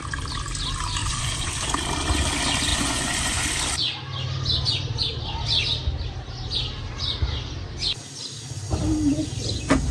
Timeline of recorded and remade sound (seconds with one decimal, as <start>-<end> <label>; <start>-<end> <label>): 0.0-1.0 recorded; 1.0-1.7 remade; 1.7-2.7 recorded; 2.7-3.5 remade; 3.5-9.9 recorded